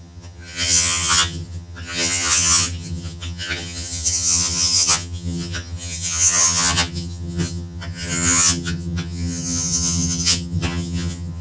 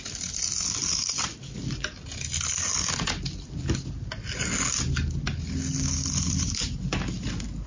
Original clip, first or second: second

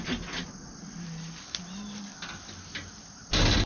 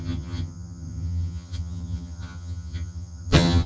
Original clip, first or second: first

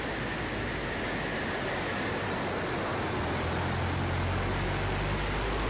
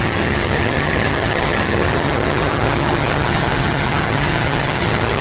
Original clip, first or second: first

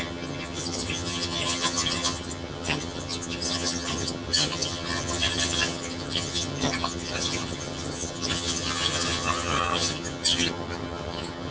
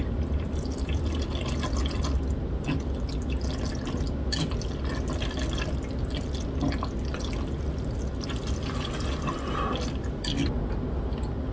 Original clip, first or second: second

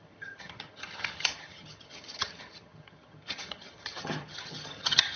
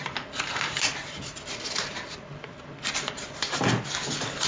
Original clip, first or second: second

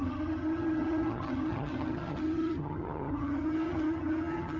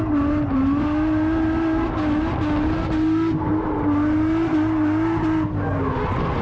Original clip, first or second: second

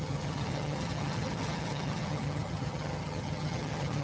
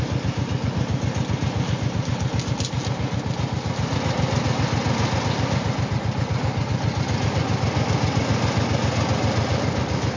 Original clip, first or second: second